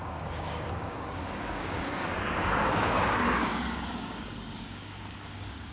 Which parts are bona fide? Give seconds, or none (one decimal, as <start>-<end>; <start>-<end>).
none